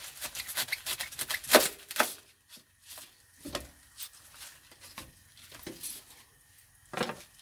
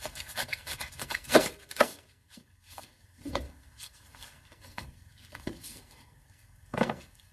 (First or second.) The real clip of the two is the first